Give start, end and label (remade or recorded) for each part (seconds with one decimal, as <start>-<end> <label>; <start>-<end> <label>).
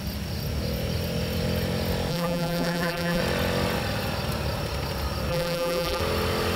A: 0.0-2.1 recorded; 2.1-3.2 remade; 3.2-5.3 recorded; 5.3-6.0 remade; 6.0-6.6 recorded